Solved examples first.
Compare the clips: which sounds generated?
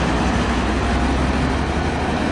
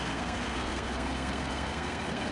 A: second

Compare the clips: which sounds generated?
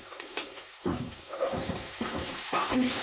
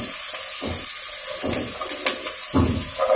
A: first